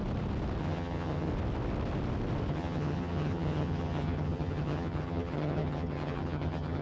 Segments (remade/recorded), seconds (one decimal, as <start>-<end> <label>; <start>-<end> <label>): 0.0-0.6 recorded; 0.6-1.3 remade; 1.3-2.5 recorded; 2.5-6.8 remade